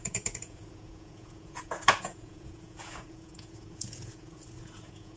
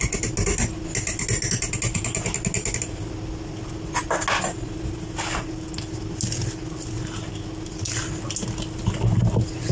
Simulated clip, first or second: first